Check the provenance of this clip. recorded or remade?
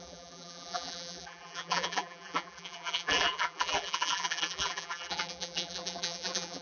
remade